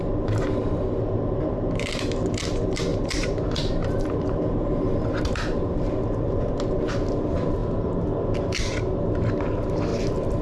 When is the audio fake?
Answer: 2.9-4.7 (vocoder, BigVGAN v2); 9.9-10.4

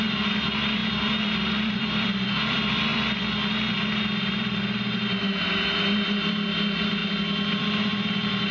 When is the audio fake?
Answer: 0.0-2.9 (vocoder, BigVGAN v2); 3.7-7.0; 7.5-8.5

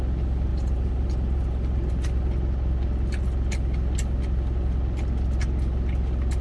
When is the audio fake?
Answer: 0.5-1.9 (vocoder, BigVGAN v2)

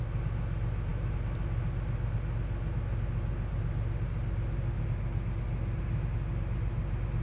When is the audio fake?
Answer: none